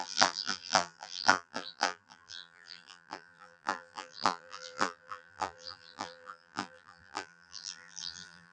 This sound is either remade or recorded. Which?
remade